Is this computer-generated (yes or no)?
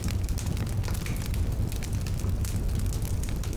no